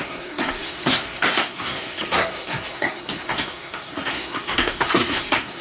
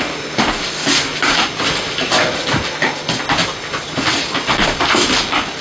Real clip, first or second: second